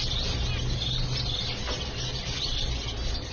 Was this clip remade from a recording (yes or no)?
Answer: no